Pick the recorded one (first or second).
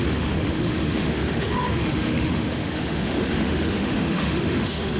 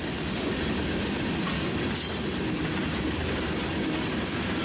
second